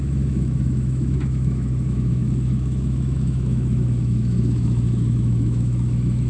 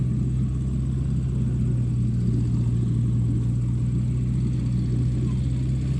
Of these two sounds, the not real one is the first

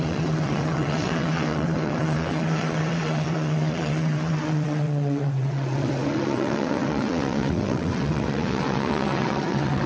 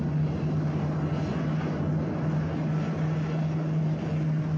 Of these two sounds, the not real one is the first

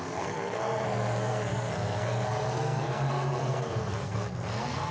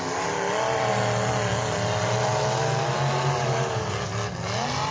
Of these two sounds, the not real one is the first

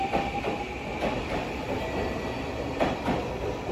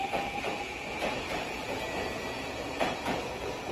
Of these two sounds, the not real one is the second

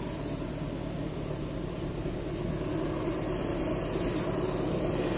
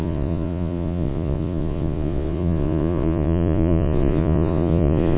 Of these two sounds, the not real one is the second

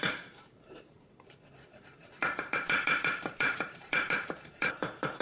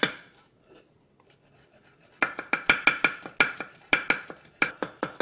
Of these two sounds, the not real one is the first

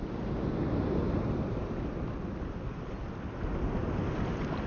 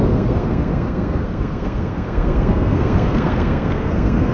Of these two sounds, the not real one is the second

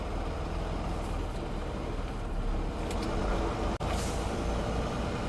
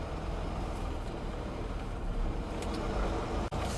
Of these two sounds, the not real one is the second